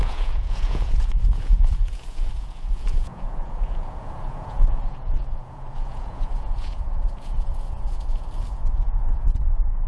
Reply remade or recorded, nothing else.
remade